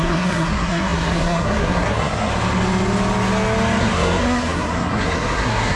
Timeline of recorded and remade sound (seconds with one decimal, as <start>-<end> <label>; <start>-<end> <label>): 0.0-2.3 remade; 2.3-3.8 recorded; 3.8-5.8 remade